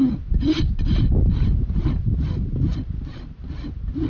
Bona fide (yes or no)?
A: yes